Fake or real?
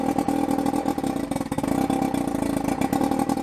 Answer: real